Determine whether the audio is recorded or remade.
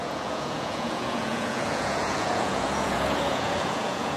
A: remade